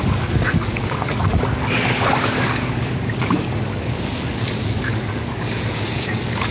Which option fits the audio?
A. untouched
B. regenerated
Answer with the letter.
B